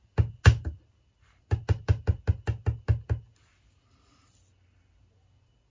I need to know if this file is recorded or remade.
recorded